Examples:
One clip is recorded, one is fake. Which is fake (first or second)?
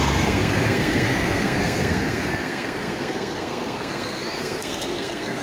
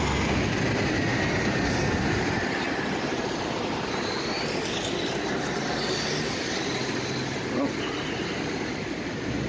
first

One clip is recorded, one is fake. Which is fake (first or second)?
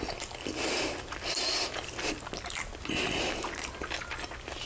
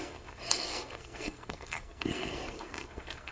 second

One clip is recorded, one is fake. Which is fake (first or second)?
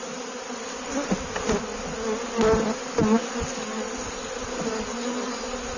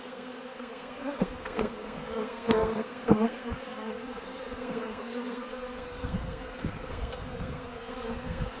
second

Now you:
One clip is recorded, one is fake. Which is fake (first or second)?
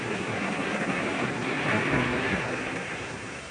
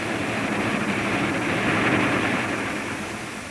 first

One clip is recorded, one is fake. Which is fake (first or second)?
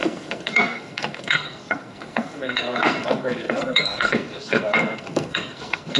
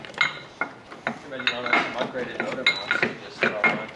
first